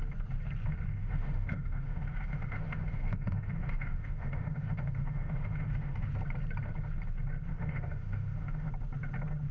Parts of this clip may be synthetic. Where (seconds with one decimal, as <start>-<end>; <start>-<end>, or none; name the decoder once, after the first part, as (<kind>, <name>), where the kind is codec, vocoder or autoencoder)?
0.9-6.1 (autoencoder, DAC-VAE); 7.5-8.7